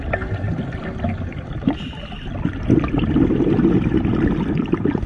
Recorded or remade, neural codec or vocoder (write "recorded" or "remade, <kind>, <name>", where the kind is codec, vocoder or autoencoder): recorded